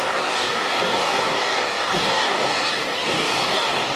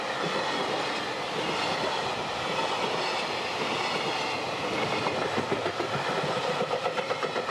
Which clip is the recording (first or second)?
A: second